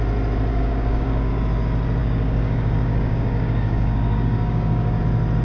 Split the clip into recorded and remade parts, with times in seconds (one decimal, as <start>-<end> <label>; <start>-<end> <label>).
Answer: 0.0-0.5 recorded; 0.5-1.3 remade; 1.3-2.0 recorded; 2.0-5.0 remade; 5.0-5.4 recorded